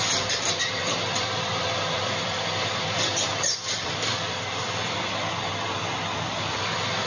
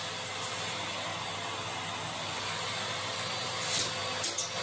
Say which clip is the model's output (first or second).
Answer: first